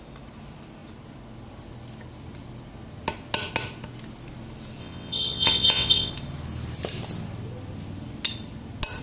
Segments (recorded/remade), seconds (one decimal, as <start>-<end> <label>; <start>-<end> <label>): 0.0-4.8 recorded; 4.8-6.1 remade; 6.1-9.0 recorded